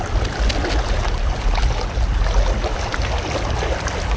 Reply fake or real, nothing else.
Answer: real